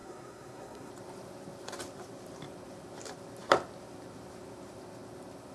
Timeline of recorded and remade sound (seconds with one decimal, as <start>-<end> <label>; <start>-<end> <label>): 0.0-0.9 remade; 0.9-5.5 recorded